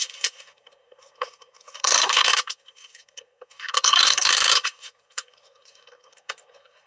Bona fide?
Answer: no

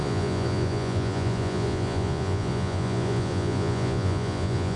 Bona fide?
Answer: no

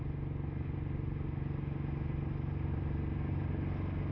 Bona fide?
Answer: yes